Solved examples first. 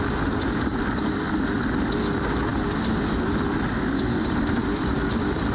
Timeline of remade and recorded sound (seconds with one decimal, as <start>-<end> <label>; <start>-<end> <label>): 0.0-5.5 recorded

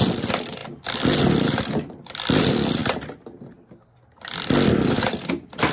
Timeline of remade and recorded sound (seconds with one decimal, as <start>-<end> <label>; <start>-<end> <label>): 0.0-5.7 recorded

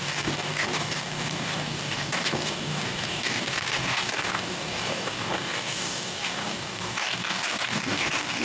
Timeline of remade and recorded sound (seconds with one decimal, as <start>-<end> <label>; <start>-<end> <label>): 0.0-8.4 remade